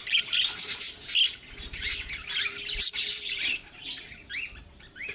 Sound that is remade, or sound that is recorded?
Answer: recorded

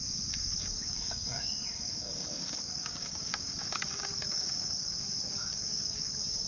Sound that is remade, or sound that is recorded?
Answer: remade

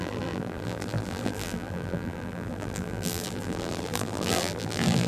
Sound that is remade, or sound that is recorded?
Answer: remade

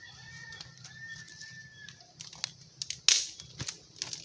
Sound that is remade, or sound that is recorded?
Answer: recorded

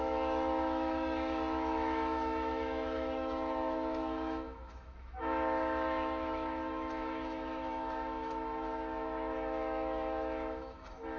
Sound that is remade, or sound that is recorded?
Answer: remade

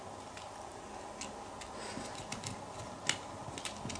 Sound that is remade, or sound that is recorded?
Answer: recorded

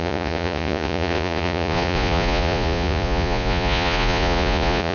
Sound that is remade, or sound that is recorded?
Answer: remade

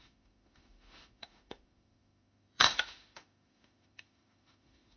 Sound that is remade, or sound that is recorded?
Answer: remade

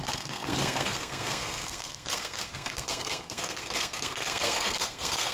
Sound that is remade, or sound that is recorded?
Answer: remade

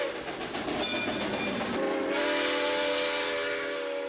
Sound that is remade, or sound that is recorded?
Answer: recorded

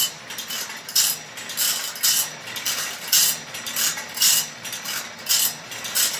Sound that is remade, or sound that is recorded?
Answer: recorded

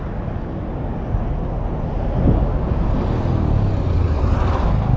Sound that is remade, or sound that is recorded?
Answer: recorded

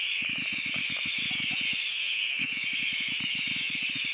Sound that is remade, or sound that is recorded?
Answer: remade